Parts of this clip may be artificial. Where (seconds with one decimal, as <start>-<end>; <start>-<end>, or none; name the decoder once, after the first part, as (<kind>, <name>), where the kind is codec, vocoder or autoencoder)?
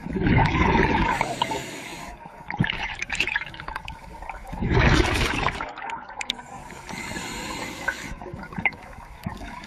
0.0-7.0 (codec, DAC); 7.6-9.7